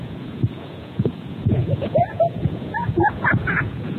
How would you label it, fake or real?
fake